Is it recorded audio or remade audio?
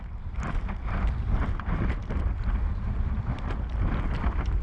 recorded